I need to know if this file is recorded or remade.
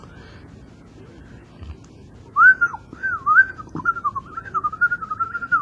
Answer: recorded